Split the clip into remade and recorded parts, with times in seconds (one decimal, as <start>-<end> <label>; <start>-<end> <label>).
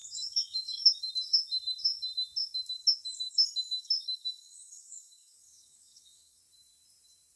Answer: 0.0-1.1 remade; 1.1-3.3 recorded; 3.3-6.4 remade; 6.4-7.4 recorded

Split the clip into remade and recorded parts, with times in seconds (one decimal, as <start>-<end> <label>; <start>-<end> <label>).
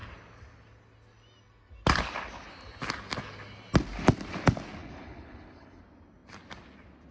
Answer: 0.0-4.8 recorded; 4.8-5.8 remade; 5.8-7.1 recorded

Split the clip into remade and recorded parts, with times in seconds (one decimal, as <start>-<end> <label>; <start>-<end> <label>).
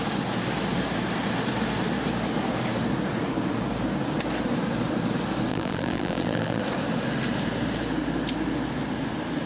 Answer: 0.0-5.5 recorded; 5.5-6.6 remade; 6.6-9.5 recorded